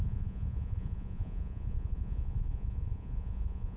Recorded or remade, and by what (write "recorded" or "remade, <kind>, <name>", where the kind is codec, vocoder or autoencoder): remade, vocoder, Vocos